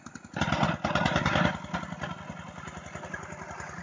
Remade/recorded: recorded